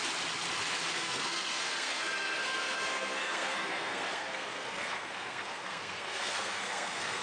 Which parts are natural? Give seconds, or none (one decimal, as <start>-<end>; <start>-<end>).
0.0-0.9